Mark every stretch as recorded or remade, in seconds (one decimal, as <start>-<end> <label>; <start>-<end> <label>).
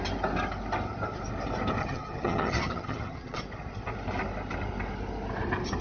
0.0-1.8 recorded; 1.8-3.4 remade; 3.4-5.8 recorded